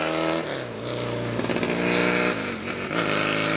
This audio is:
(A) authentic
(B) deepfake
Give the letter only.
A